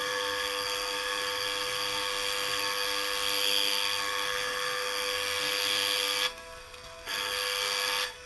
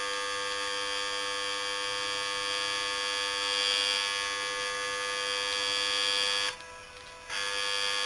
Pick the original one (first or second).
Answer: second